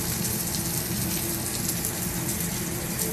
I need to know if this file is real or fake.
real